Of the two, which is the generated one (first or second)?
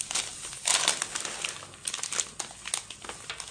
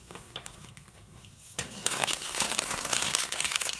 second